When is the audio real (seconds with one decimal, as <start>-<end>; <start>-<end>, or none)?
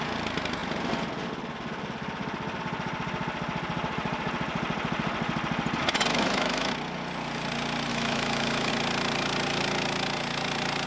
0.0-6.1; 6.7-7.9; 8.7-10.9